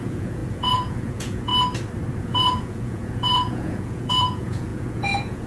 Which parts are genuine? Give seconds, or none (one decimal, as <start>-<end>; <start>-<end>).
1.5-2.2